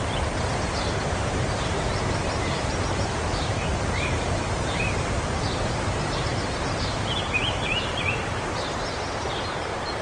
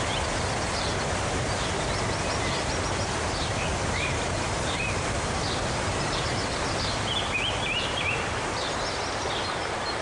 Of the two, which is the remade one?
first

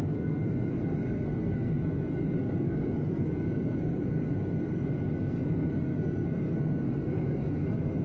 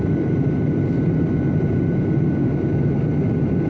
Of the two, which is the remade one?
first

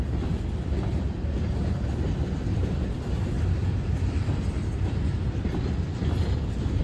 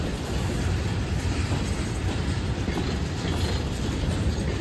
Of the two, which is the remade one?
second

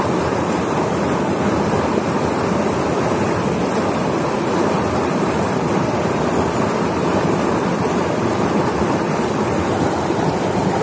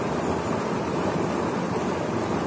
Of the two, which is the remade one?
first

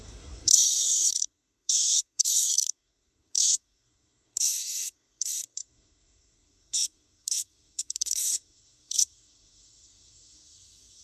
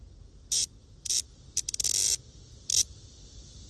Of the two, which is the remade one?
first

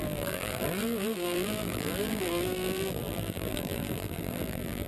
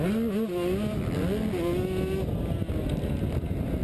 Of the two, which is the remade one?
first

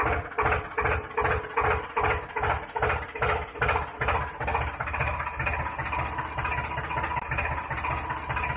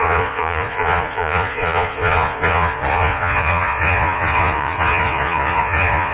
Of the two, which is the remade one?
second